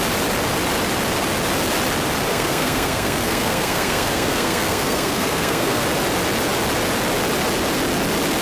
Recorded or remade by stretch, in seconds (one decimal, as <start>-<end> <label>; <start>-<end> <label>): 0.0-2.3 recorded; 2.3-5.8 remade; 5.8-8.4 recorded